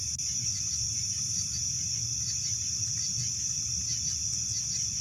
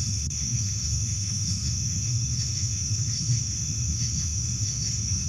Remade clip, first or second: second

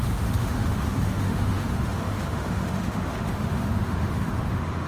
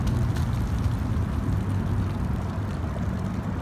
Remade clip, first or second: first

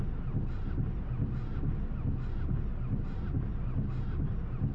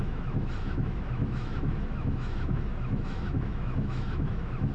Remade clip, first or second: second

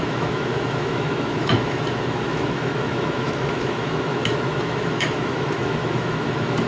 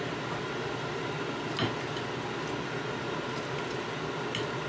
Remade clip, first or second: first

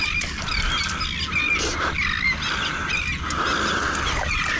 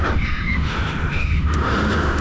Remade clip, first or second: second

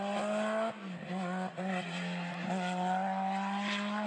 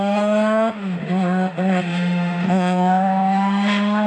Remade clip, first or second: second